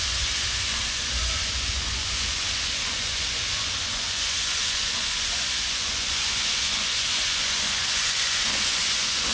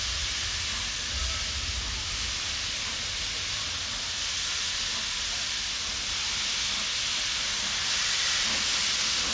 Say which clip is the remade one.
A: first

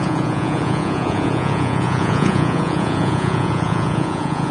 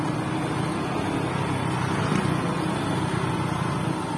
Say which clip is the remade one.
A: first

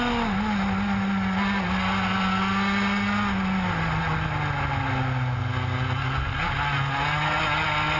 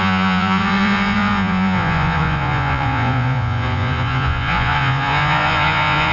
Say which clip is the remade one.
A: second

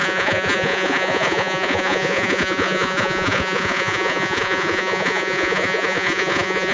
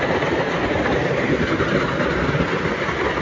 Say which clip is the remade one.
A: first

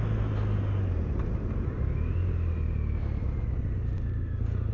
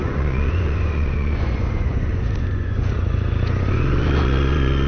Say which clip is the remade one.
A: second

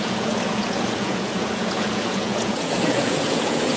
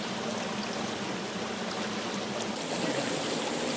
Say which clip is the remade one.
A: first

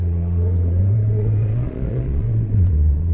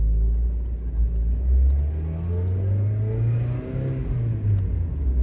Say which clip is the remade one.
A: first